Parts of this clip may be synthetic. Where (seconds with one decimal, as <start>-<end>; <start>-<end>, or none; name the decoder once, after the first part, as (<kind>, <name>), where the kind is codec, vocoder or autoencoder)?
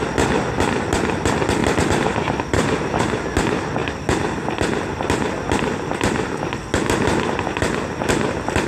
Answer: 1.6-3.0 (vocoder, BigVGAN v2)